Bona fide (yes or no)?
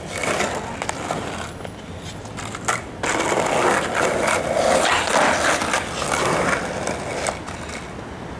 yes